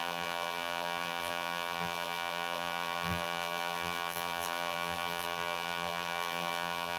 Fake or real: fake